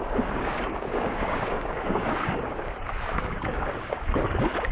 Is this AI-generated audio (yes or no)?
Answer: yes